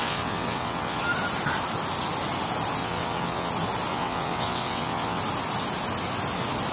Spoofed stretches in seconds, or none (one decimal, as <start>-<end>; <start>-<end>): 0.0-1.0; 2.8-3.5; 3.9-5.2